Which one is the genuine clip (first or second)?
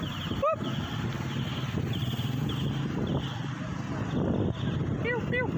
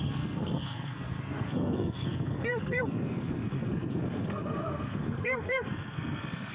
first